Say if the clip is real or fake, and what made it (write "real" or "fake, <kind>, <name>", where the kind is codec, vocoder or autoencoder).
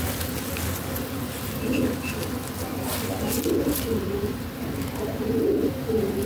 real